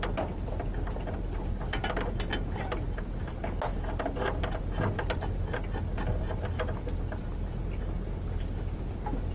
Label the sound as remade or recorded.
recorded